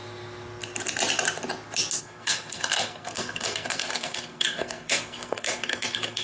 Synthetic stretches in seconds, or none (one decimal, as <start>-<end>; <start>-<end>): 2.0-6.2